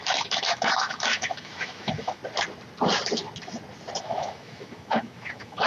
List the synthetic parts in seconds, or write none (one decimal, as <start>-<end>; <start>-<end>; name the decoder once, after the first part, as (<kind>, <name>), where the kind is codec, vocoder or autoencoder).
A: 0.0-2.2 (autoencoder, DAC-VAE); 4.0-5.7